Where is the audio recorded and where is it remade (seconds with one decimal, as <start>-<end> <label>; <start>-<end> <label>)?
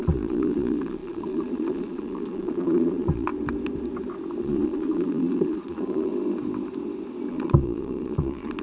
0.0-3.3 remade; 3.3-4.4 recorded; 4.4-6.1 remade; 6.1-7.3 recorded; 7.3-8.6 remade